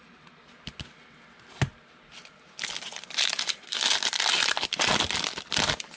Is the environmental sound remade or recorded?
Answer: recorded